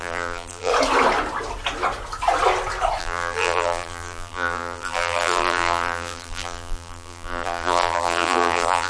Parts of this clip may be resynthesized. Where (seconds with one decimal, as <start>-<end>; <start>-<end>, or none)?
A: 0.0-0.7; 3.0-8.9